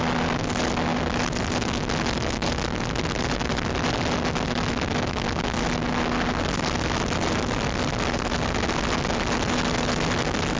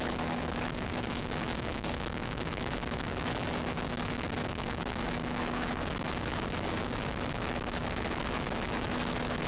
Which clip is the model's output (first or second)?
second